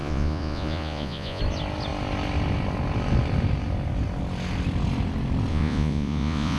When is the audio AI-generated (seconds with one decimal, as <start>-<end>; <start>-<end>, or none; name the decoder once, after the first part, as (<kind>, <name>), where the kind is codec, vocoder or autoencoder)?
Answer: 0.0-1.4 (vocoder, Vocos); 5.5-6.6